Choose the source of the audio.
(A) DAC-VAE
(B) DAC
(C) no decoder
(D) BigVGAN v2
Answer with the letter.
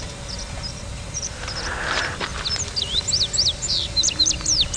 D